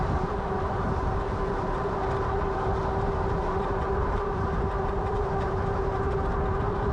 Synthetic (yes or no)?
yes